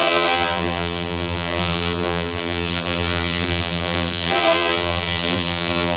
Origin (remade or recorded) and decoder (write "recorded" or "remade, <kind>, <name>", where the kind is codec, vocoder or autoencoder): remade, vocoder, BigVGAN v2